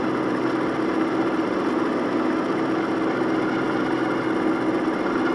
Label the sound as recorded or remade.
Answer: recorded